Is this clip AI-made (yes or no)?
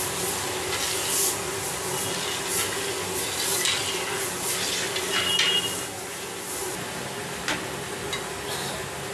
no